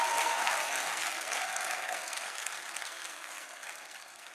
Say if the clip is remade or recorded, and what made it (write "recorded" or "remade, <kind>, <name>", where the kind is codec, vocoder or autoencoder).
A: remade, codec, SNAC